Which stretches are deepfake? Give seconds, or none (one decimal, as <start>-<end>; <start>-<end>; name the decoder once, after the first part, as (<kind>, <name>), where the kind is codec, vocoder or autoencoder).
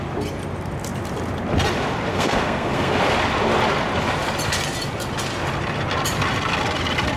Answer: 2.1-3.0 (codec, SNAC)